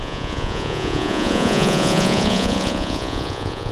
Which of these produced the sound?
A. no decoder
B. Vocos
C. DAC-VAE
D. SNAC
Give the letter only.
B